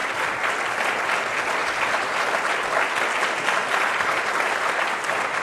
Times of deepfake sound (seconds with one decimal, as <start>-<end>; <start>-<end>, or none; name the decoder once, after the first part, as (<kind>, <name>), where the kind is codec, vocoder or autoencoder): none